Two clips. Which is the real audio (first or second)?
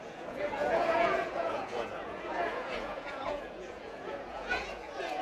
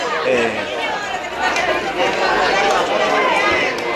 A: second